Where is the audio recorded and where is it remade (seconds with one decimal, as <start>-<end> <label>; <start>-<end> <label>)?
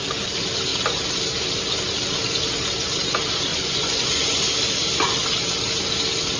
0.0-3.5 recorded; 3.5-4.4 remade; 4.4-6.4 recorded